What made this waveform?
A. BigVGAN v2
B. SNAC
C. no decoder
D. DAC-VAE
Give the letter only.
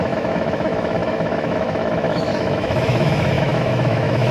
D